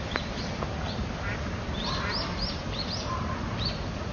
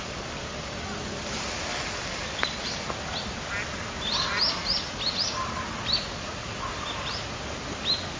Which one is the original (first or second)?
second